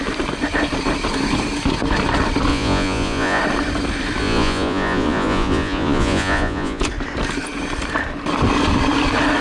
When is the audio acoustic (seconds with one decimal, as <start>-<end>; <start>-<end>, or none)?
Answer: 0.0-2.5; 3.4-4.2; 6.8-9.4